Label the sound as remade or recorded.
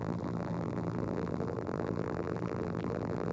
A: remade